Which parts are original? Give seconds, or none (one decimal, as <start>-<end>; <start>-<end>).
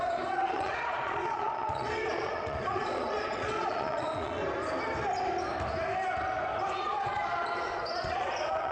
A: 4.4-6.8